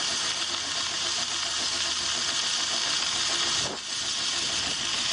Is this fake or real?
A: real